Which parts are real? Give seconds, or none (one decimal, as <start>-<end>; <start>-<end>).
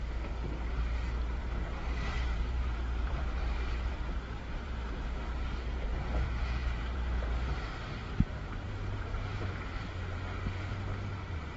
0.0-1.4; 5.9-6.6; 9.5-11.6